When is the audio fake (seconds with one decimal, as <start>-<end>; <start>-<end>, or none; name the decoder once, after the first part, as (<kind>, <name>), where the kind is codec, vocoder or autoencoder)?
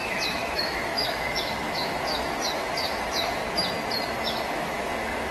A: 0.0-3.4 (autoencoder, DAC-VAE); 4.1-5.3